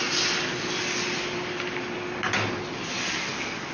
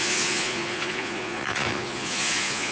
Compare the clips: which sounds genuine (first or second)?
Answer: first